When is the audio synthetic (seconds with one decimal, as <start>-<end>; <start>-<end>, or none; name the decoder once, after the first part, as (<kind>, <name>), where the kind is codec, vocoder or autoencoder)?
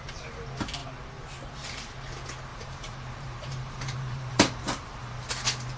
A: 2.5-5.3 (vocoder, BigVGAN v2)